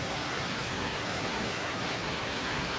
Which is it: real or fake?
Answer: fake